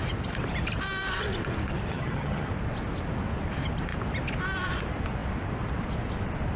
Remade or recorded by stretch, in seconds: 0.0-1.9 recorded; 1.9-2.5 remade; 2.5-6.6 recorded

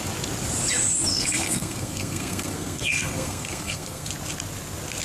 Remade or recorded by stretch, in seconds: 0.0-1.1 recorded; 1.1-4.1 remade; 4.1-5.0 recorded

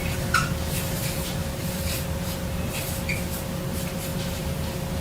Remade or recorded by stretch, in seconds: 0.0-1.4 recorded; 1.4-2.7 remade; 2.7-4.1 recorded; 4.1-5.0 remade

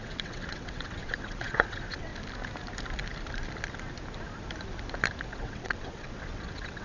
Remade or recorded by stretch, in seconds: 0.0-2.1 remade; 2.1-5.3 recorded; 5.3-6.8 remade